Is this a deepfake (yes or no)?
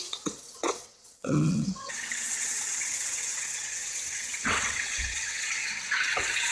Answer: yes